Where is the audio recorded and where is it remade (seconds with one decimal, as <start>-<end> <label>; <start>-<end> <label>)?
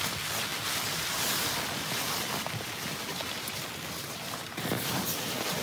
0.0-5.6 recorded